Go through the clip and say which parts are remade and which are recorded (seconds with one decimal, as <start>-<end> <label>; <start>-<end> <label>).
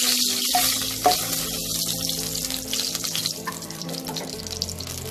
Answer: 0.0-3.2 recorded; 3.2-4.4 remade; 4.4-5.1 recorded